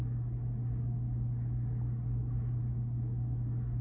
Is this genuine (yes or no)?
yes